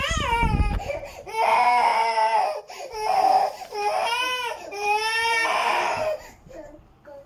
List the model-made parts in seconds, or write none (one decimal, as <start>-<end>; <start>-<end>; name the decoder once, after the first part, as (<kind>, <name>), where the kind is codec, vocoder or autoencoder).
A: 0.0-1.9 (vocoder, BigVGAN v2); 2.6-7.3

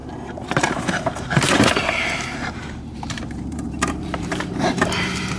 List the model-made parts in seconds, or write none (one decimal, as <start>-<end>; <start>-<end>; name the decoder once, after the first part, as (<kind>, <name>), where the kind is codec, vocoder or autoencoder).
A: 0.0-5.4 (vocoder, BigVGAN v2)

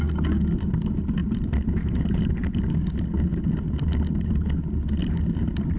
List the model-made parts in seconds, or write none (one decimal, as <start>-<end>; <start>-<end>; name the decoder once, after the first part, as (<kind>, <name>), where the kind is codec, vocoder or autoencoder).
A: 1.2-2.7 (vocoder, BigVGAN v2)

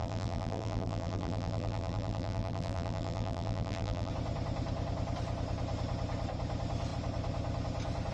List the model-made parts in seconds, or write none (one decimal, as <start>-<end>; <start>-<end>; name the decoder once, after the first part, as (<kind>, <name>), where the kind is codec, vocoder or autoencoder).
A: 0.0-4.1 (vocoder, BigVGAN v2)

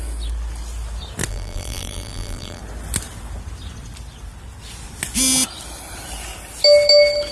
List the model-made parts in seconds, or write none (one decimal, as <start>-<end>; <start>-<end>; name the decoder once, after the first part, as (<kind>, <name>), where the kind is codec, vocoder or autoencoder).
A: 1.3-2.6 (vocoder, BigVGAN v2)

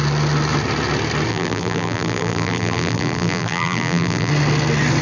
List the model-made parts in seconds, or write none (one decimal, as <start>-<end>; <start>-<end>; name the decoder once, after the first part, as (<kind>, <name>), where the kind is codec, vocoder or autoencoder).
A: 1.3-4.3 (vocoder, BigVGAN v2)

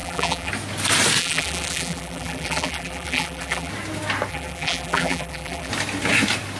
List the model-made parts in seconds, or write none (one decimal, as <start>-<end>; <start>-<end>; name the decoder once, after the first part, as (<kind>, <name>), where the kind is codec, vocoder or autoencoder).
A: 0.0-0.5 (vocoder, BigVGAN v2); 1.2-3.7; 4.3-5.7

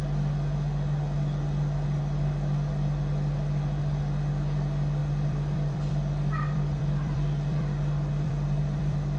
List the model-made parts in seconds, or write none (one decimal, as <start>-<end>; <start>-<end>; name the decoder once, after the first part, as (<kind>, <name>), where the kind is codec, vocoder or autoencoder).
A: 5.0-9.2 (vocoder, BigVGAN v2)